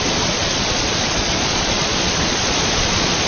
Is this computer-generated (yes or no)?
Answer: yes